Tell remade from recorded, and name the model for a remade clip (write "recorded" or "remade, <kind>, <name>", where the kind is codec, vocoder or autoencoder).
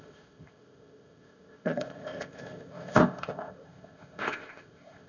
remade, codec, ZipCodec